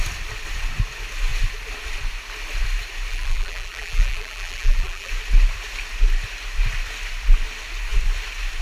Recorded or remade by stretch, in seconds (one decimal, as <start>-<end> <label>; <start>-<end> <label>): 0.0-3.1 recorded; 3.1-5.1 remade; 5.1-8.6 recorded